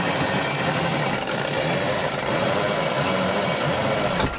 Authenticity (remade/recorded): recorded